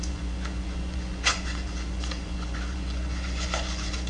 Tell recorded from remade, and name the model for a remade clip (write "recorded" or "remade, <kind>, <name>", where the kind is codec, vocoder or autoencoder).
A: remade, vocoder, Vocos